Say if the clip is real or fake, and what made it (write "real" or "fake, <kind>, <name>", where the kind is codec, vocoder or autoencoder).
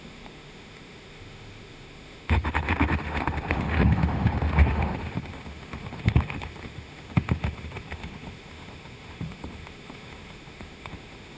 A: fake, autoencoder, DAC-VAE